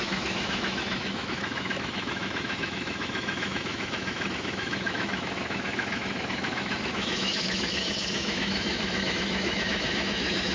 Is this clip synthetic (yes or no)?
yes